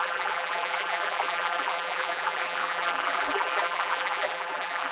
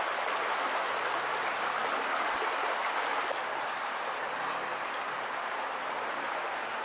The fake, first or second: first